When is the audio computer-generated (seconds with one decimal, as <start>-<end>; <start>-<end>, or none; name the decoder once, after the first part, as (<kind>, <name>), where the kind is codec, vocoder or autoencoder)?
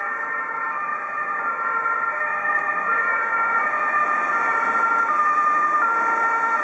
0.9-1.5 (vocoder, Vocos); 2.3-4.0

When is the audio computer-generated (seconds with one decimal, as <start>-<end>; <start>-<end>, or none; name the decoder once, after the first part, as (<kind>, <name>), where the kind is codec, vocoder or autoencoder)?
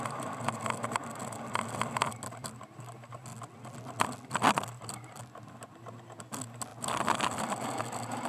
none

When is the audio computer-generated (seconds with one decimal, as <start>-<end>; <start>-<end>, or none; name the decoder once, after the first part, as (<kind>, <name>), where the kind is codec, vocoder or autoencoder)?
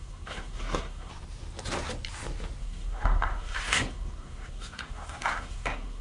0.0-1.1 (codec, SNAC); 2.6-6.0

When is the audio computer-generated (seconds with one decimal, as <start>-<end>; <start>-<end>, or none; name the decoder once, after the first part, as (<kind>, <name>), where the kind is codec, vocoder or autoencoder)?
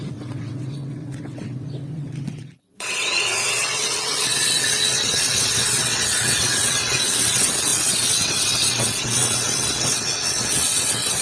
0.0-11.2 (vocoder, WaveNeXt)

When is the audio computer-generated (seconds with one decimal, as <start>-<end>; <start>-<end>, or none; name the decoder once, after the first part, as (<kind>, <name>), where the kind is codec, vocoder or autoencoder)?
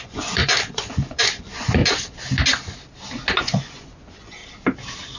0.0-1.8 (vocoder, Vocos); 3.4-4.4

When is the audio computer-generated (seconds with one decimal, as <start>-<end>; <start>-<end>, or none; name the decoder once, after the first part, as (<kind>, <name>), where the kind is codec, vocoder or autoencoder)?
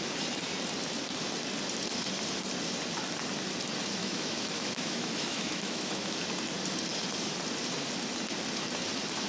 4.0-6.1 (autoencoder, DAC-VAE)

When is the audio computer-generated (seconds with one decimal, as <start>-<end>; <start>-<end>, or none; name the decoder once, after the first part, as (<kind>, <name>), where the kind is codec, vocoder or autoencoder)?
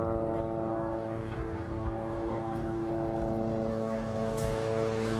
0.7-2.9 (codec, DAC); 3.7-5.2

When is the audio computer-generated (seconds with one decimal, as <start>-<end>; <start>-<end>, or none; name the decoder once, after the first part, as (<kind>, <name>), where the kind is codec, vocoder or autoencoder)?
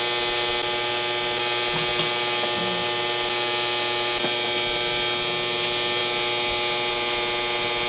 none